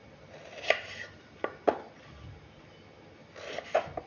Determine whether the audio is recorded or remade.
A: recorded